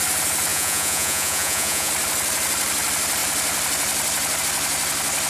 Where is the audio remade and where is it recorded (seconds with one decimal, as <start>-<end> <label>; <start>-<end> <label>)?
0.0-0.5 recorded; 0.5-1.9 remade; 1.9-5.3 recorded